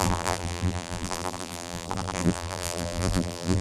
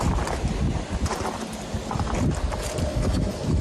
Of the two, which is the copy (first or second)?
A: first